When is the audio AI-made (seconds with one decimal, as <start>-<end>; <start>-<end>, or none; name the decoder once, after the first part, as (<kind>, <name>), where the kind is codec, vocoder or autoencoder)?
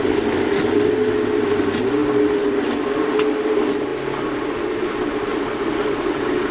none